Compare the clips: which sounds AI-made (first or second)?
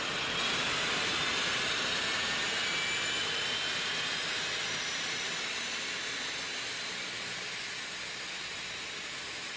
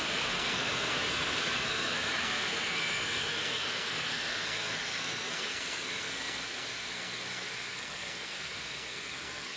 second